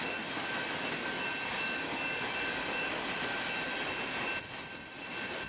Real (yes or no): yes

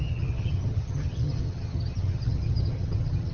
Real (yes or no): no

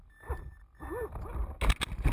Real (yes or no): yes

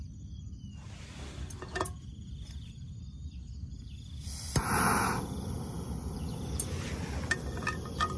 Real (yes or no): yes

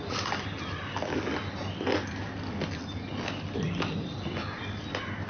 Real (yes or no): yes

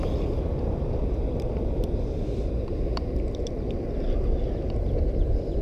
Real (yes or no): yes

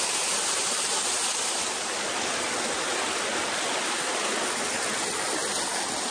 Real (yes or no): yes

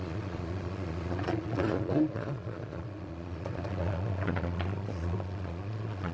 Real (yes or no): no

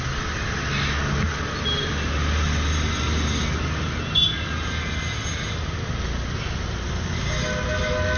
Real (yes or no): yes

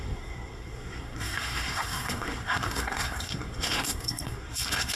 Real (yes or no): no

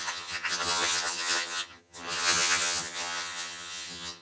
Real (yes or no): no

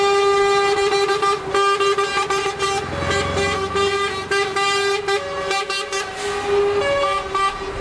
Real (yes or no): yes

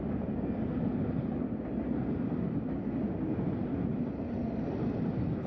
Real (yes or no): yes